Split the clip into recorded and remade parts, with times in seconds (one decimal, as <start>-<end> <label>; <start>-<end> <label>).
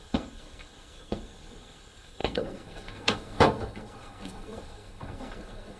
0.0-5.8 remade